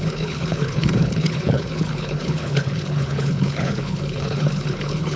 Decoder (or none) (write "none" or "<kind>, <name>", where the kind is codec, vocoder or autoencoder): codec, HILCodec